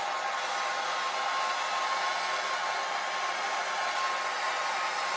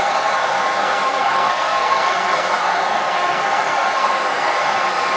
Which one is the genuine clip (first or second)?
first